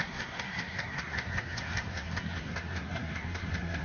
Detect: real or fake fake